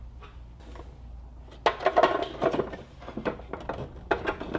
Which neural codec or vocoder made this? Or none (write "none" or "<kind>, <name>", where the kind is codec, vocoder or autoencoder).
none